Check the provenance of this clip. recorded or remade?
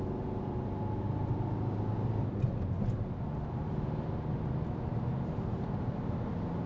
recorded